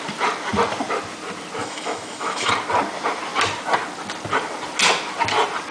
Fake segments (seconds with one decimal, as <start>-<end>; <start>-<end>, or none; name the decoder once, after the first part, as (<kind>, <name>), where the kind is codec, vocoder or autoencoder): 1.6-2.5 (autoencoder, DAC-VAE)